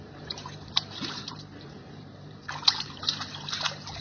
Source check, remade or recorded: remade